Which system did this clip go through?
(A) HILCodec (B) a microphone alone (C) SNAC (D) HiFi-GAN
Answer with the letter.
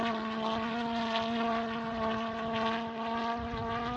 B